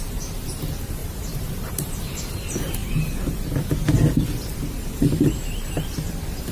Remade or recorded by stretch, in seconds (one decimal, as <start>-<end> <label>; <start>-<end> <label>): 0.0-1.0 recorded; 1.0-2.2 remade; 2.2-6.5 recorded